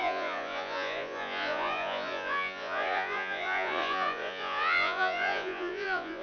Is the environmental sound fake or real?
fake